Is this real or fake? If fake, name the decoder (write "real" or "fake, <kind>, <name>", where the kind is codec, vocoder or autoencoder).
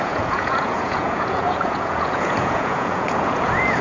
fake, vocoder, Vocos